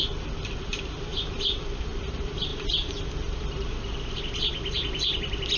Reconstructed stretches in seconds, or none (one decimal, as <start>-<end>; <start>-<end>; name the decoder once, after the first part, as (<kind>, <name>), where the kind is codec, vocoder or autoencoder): 1.1-1.8 (vocoder, BigVGAN v2); 2.5-4.2